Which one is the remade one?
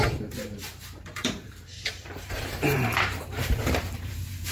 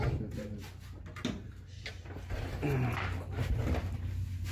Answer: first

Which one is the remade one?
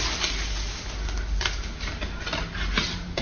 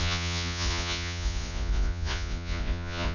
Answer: second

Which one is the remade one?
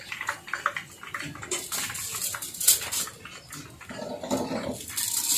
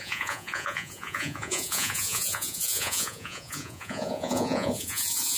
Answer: second